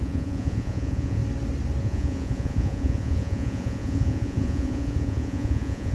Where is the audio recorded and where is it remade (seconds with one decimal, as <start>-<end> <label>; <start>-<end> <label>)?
0.0-1.2 remade; 1.2-1.8 recorded; 1.8-5.9 remade